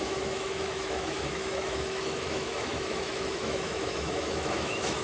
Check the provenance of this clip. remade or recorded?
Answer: remade